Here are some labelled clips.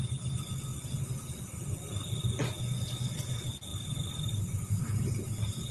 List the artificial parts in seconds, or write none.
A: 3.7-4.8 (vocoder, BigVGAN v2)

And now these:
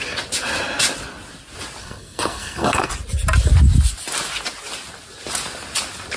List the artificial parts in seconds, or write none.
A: 1.8-2.9 (codec, SNAC)

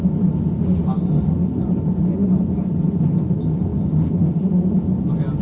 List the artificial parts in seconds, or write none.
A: none